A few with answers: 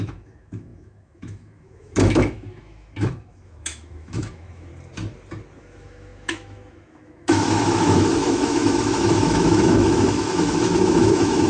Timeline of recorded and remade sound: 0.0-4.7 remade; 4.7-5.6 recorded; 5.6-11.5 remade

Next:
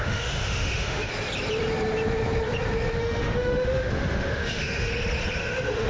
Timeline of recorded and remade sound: 0.0-1.1 remade; 1.1-3.0 recorded; 3.0-4.9 remade; 4.9-5.4 recorded; 5.4-5.9 remade